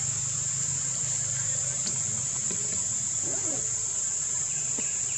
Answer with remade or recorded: recorded